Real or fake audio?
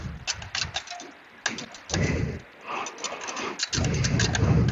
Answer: real